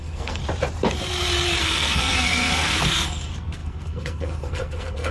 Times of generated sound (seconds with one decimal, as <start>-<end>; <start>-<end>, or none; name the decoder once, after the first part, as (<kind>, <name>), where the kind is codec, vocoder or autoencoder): 0.0-0.4 (codec, SNAC); 1.6-5.1